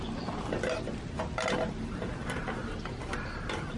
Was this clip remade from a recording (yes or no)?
no